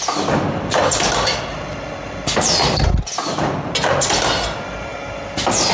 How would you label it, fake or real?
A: real